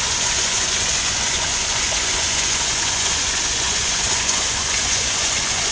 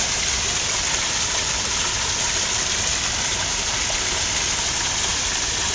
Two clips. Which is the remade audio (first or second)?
first